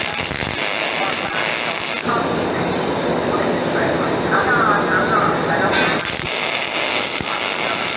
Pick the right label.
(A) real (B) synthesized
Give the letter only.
A